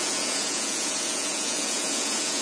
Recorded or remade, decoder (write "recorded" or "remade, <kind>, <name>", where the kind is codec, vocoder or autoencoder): remade, vocoder, Vocos